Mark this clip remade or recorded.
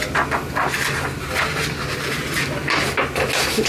recorded